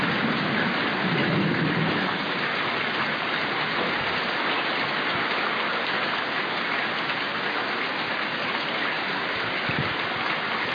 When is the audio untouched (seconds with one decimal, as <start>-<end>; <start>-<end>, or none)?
0.0-1.2; 2.3-10.7